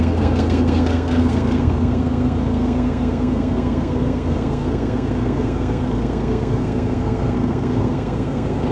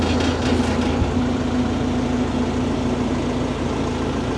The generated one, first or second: first